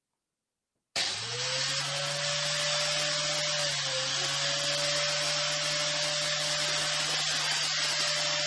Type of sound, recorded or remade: recorded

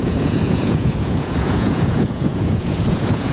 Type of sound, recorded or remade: remade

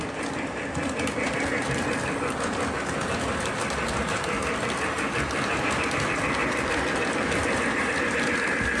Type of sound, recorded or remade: recorded